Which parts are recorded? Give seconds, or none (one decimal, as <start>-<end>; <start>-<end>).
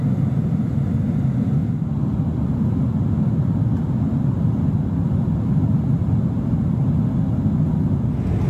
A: 0.0-8.5